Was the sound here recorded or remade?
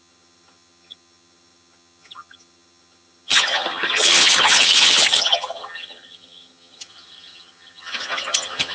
remade